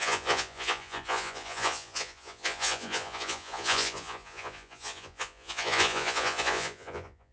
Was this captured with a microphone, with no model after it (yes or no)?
no